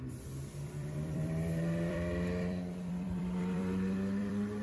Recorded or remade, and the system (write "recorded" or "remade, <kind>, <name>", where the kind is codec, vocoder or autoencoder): remade, vocoder, BigVGAN v2